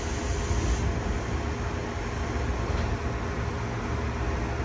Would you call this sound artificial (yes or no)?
no